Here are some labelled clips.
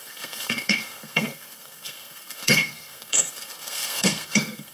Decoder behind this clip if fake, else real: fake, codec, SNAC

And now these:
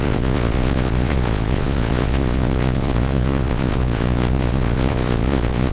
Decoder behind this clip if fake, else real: fake, vocoder, Vocos